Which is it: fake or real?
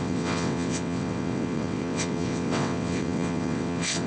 fake